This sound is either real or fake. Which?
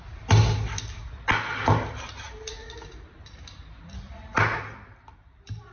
real